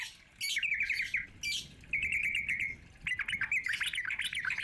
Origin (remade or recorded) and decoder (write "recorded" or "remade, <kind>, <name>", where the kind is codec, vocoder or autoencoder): recorded